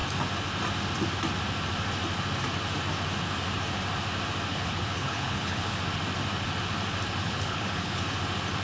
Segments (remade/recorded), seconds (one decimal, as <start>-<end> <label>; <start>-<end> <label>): 0.0-4.5 recorded; 4.5-5.8 remade; 5.8-7.2 recorded; 7.2-8.0 remade; 8.0-8.6 recorded